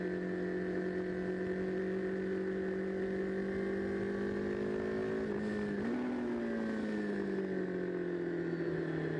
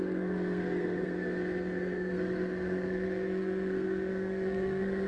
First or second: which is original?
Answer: first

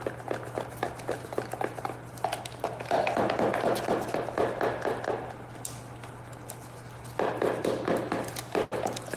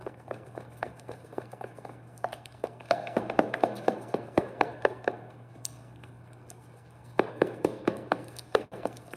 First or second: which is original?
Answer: first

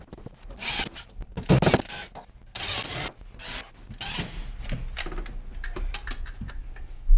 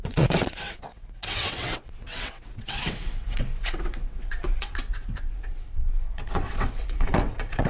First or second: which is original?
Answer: first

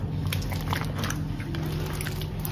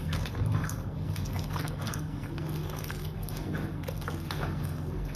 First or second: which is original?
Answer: first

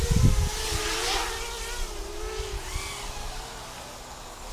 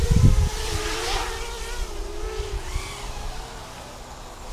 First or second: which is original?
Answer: first